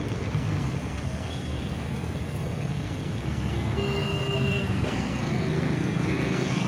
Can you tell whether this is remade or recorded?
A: remade